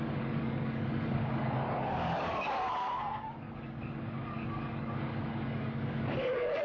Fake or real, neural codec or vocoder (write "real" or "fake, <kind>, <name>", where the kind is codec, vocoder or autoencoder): fake, codec, DAC